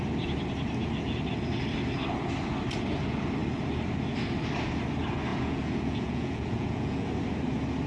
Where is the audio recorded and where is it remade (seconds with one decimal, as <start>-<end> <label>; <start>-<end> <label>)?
0.0-5.3 recorded; 5.3-7.1 remade; 7.1-7.9 recorded